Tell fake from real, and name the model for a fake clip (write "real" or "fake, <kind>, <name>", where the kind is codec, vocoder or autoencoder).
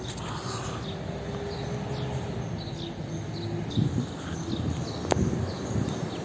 real